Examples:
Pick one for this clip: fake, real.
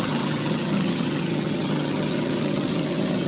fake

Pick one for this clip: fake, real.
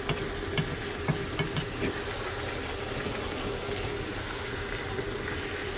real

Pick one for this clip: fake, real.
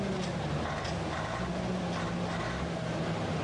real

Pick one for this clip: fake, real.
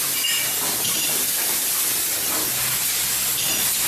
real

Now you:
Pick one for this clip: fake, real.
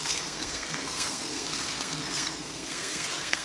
fake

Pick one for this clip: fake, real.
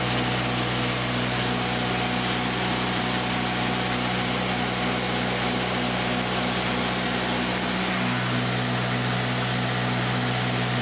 real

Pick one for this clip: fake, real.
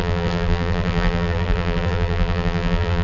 fake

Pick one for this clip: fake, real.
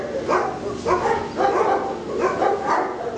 real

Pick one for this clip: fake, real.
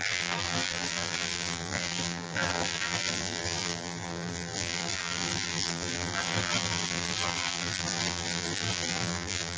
fake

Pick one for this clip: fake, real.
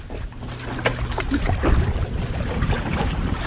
real